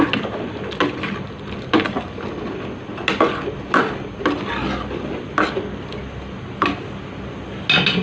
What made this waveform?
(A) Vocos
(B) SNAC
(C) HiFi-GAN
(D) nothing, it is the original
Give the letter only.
D